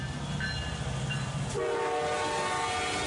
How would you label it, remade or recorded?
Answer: recorded